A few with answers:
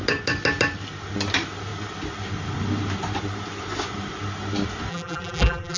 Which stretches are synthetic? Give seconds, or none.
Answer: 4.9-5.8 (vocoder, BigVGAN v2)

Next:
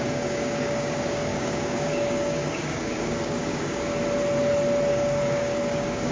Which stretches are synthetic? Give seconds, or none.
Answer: 0.0-3.9 (codec, DAC); 4.9-6.1